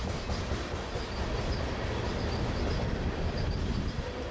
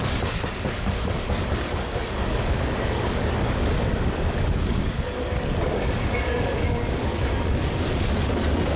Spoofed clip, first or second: second